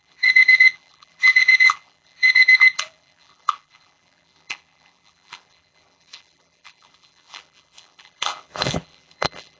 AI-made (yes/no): yes